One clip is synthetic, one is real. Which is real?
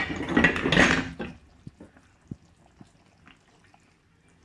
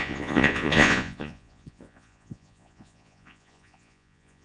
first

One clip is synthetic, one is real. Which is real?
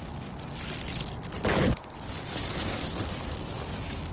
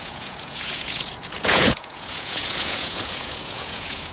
first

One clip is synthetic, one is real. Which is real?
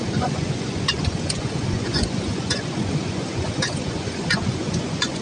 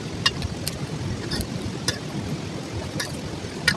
second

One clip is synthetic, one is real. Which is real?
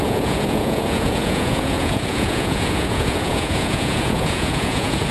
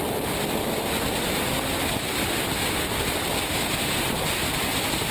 second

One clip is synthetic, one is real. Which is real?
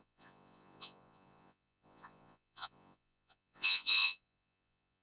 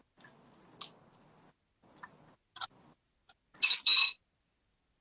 second